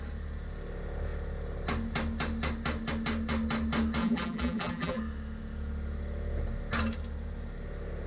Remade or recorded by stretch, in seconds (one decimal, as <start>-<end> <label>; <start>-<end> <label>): 0.0-4.0 recorded; 4.0-5.0 remade; 5.0-8.1 recorded